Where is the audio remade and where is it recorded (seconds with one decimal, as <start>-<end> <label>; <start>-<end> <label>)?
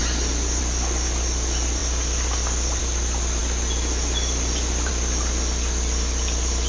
0.0-6.7 recorded